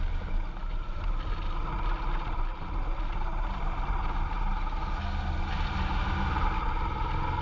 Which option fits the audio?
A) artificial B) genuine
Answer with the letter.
B